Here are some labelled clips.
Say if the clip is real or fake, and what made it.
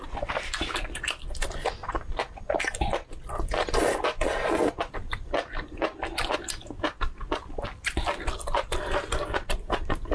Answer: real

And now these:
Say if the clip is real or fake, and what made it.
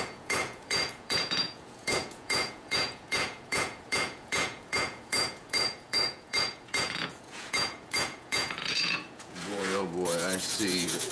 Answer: fake, vocoder, Vocos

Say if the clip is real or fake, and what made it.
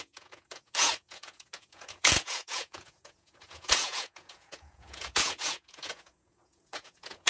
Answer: fake, vocoder, Vocos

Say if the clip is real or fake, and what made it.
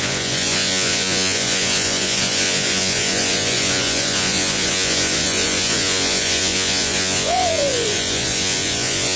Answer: fake, vocoder, Vocos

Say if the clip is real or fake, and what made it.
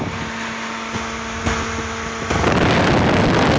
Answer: real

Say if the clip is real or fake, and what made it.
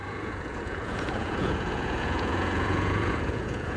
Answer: fake, vocoder, Vocos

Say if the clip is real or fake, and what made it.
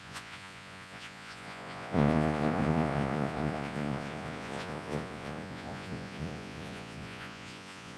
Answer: fake, vocoder, Vocos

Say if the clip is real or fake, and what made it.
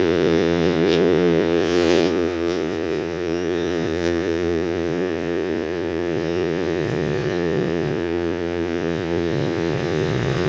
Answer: fake, vocoder, Vocos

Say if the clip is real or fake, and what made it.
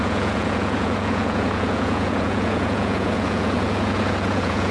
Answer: fake, vocoder, Vocos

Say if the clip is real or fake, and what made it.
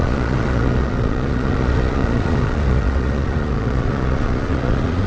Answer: fake, vocoder, Vocos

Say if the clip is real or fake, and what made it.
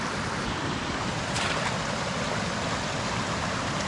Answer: real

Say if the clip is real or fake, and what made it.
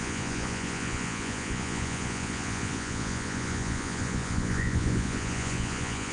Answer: fake, vocoder, Vocos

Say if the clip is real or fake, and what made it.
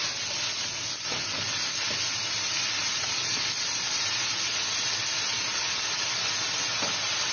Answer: real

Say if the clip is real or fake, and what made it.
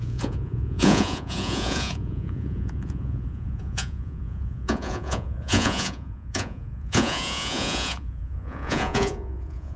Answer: fake, vocoder, Vocos